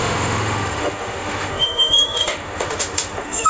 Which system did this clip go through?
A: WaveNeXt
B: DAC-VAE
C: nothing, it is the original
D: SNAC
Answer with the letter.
B